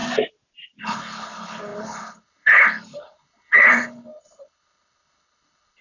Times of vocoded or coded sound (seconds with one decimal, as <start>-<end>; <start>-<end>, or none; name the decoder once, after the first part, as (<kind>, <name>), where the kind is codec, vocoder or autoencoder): 0.8-5.8 (codec, HILCodec)